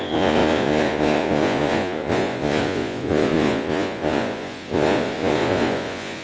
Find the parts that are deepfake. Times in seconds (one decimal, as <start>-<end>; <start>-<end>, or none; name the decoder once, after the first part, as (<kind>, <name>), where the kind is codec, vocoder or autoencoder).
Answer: 0.0-6.2 (vocoder, Vocos)